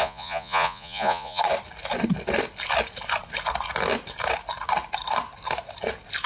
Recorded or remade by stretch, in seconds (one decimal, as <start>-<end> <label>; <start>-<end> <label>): 0.0-1.4 remade; 1.4-6.3 recorded